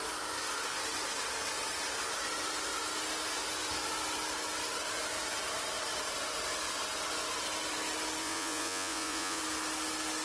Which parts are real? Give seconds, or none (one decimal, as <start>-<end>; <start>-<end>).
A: 0.0-8.2; 9.4-10.2